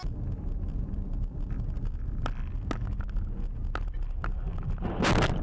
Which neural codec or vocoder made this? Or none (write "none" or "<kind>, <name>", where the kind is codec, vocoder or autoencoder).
none